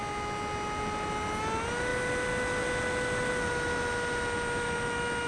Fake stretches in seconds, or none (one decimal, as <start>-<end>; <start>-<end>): none